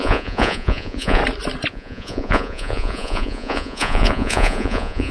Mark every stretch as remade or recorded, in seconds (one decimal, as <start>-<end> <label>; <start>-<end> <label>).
0.0-1.2 remade; 1.2-1.7 recorded; 1.7-5.1 remade